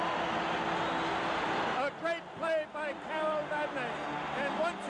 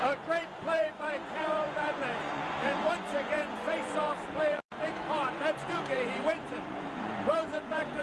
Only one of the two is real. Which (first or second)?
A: first